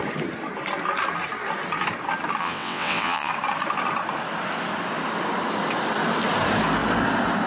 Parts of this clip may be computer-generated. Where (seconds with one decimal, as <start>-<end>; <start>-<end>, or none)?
2.4-3.3